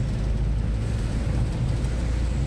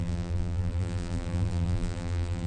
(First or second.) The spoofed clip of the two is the second